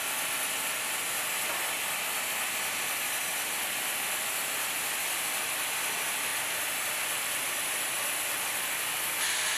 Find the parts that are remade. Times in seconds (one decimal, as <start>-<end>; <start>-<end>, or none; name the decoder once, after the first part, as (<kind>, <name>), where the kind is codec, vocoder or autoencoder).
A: none